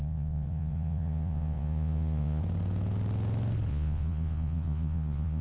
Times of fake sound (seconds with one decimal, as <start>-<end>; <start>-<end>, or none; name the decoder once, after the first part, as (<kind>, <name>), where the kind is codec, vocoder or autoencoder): 0.0-2.4 (vocoder, Vocos); 3.7-5.4